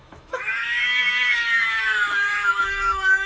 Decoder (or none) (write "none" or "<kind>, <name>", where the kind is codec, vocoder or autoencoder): autoencoder, DAC-VAE